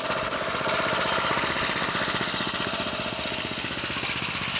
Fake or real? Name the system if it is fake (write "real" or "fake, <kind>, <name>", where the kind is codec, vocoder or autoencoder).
real